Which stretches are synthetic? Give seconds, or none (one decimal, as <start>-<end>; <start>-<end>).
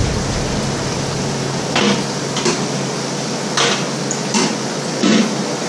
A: 4.3-5.2